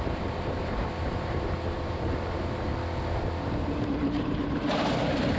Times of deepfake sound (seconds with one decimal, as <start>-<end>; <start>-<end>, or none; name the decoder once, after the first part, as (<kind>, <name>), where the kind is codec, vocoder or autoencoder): 0.0-2.7 (vocoder, BigVGAN v2); 3.8-5.4